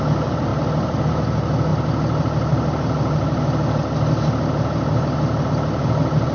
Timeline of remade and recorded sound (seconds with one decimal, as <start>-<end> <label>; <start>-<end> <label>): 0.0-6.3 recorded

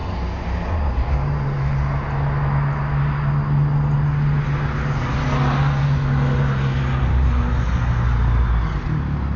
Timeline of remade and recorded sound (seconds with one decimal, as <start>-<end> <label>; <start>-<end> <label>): 0.0-9.4 recorded

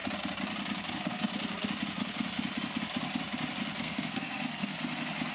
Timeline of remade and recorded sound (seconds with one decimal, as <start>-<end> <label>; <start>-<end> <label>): 0.0-0.9 recorded; 0.9-1.3 remade; 1.3-3.8 recorded; 3.8-4.7 remade; 4.7-5.3 recorded

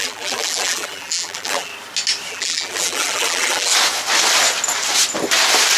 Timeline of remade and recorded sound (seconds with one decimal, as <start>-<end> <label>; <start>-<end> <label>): 0.0-1.7 remade; 1.7-2.3 recorded; 2.3-3.7 remade; 3.7-5.8 recorded

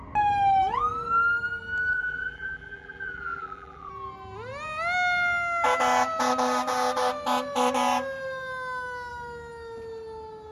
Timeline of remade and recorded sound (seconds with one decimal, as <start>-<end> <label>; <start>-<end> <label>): 0.0-1.9 recorded; 1.9-3.9 remade; 3.9-10.5 recorded

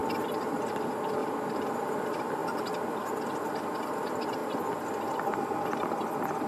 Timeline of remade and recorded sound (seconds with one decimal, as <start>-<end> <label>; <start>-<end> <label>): 0.0-2.4 recorded; 2.4-3.8 remade; 3.8-6.5 recorded